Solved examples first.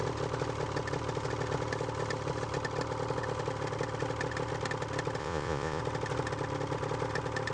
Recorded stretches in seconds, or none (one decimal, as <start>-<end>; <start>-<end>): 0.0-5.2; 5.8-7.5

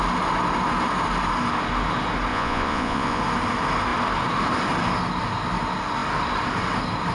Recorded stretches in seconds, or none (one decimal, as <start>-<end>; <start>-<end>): 0.0-2.3; 3.2-7.1

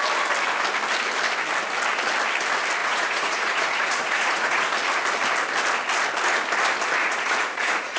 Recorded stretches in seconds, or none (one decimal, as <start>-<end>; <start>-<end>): 0.0-2.8; 4.7-7.0

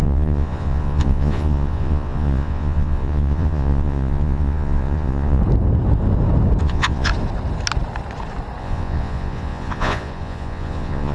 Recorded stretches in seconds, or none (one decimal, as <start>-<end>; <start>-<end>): 5.4-6.6; 7.1-8.6

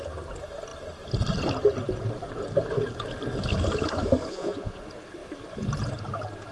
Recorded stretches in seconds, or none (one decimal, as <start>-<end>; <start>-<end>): 0.0-4.3; 4.8-6.5

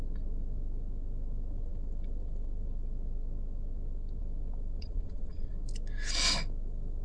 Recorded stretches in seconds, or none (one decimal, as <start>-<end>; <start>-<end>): 0.0-4.8; 5.5-7.0

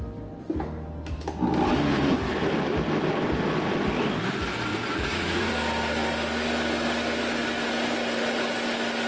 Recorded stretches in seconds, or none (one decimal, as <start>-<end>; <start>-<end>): 0.0-4.7; 5.5-9.1

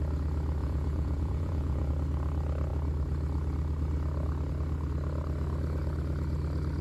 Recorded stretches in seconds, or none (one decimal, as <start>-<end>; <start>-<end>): 0.0-0.6; 1.9-6.8